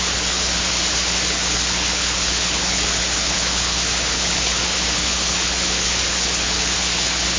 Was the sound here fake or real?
fake